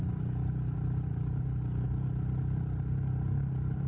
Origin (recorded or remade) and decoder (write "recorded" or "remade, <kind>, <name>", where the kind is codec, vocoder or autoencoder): recorded